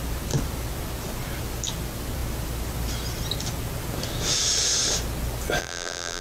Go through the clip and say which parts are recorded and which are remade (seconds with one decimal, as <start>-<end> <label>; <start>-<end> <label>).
0.0-5.6 recorded; 5.6-6.2 remade